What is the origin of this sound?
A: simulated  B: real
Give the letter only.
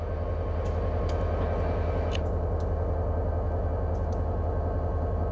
B